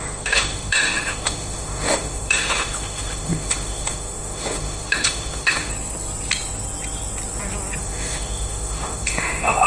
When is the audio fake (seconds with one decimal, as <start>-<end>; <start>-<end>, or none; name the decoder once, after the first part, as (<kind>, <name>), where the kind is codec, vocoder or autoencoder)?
0.0-5.7 (autoencoder, DAC-VAE); 7.8-9.7